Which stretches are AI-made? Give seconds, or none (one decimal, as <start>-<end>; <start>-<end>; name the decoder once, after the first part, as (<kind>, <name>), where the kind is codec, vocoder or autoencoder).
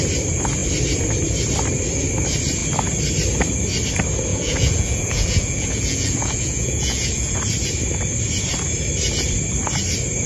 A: 4.3-7.4 (vocoder, Vocos)